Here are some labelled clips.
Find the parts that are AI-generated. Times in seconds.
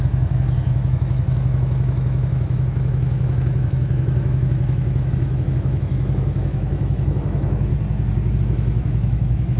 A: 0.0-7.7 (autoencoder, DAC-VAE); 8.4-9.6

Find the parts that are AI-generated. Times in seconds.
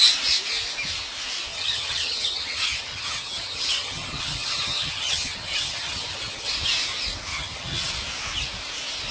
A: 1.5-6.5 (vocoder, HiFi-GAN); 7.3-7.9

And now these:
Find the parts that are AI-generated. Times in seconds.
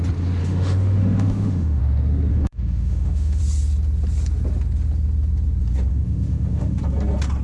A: 0.4-1.8 (autoencoder, DAC-VAE); 2.3-3.4; 5.9-6.8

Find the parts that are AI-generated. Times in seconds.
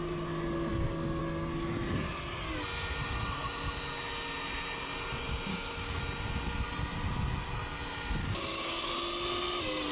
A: 0.7-1.2 (codec, DAC); 5.5-6.0; 8.2-8.9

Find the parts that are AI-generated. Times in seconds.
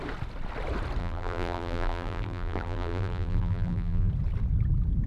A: 1.0-4.1 (vocoder, BigVGAN v2)